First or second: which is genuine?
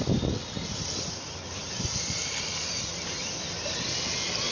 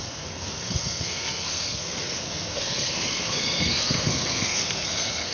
first